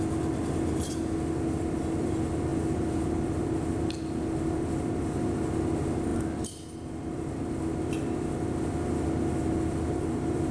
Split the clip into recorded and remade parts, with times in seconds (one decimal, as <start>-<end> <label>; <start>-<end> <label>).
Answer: 0.0-2.5 recorded; 2.5-3.4 remade; 3.4-10.5 recorded